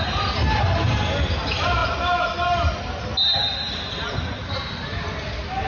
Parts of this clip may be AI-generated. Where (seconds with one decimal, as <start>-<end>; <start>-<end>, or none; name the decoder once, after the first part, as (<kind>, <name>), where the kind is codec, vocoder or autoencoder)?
none